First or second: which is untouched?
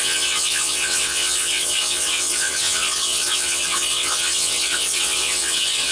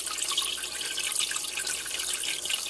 second